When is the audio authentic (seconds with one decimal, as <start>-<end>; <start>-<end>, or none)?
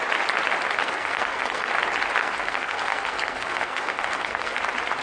0.0-0.8; 1.7-2.2; 4.6-5.0